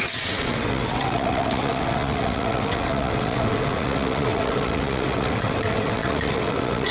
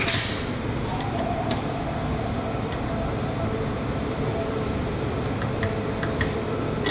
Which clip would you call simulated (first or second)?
first